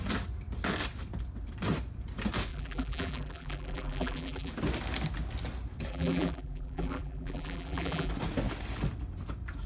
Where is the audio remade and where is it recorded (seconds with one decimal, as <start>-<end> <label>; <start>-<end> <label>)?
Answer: 0.0-2.5 recorded; 2.5-4.5 remade; 4.5-5.9 recorded; 5.9-8.1 remade; 8.1-9.7 recorded